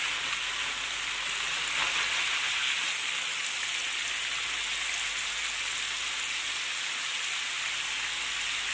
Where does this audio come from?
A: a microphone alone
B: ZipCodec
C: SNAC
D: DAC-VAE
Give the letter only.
A